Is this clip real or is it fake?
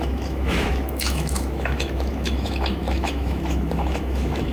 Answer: fake